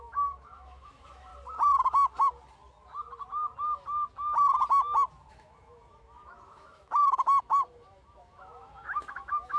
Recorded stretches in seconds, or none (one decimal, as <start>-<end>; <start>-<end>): 1.3-5.3